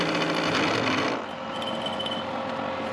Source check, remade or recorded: recorded